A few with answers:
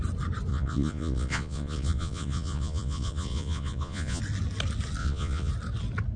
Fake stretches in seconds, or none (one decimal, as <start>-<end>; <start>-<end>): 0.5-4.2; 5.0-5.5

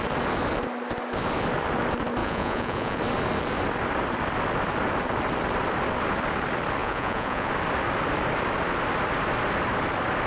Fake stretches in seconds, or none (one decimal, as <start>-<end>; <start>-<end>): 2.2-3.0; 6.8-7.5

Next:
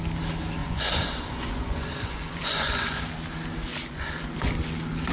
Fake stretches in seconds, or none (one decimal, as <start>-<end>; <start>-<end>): 0.6-3.0; 3.7-4.5

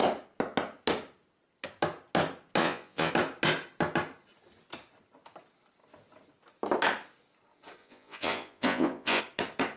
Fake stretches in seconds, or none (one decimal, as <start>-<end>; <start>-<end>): 2.6-3.1; 7.8-9.2

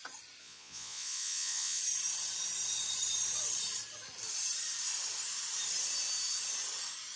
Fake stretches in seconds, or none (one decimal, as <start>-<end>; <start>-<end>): 0.4-1.8

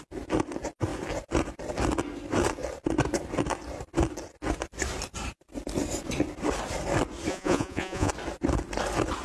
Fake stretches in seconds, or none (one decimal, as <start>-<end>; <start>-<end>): 7.3-8.1

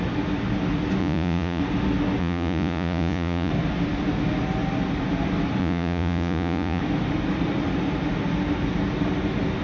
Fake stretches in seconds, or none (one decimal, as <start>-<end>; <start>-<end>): 1.0-1.6; 2.2-3.5; 5.6-6.8

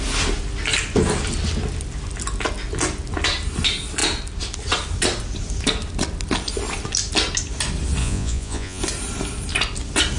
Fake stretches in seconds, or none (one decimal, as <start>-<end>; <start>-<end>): 8.0-8.8